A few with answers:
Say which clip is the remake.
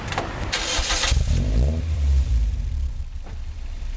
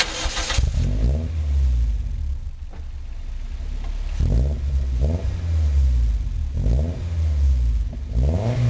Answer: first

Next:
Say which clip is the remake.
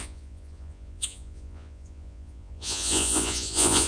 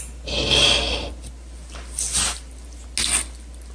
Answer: first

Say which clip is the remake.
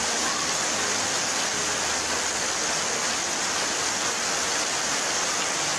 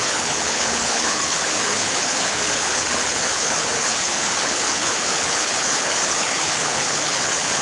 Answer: second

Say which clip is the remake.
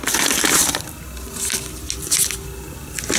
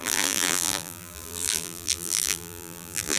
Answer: second